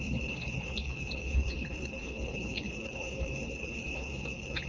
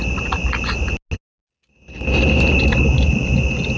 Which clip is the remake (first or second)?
first